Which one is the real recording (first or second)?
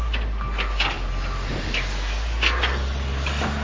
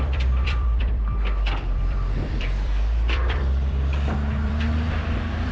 first